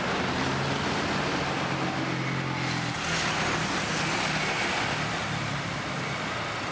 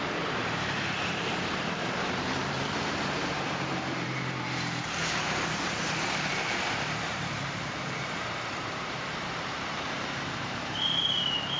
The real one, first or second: first